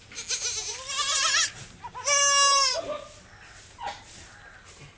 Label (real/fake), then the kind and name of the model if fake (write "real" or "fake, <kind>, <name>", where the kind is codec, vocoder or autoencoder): real